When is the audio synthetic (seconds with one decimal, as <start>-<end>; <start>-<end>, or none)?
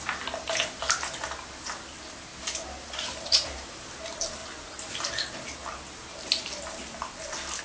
2.3-3.8